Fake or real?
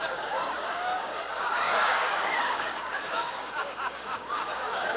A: fake